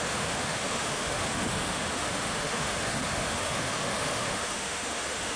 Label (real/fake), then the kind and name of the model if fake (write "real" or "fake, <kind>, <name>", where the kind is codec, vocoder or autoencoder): fake, autoencoder, DAC-VAE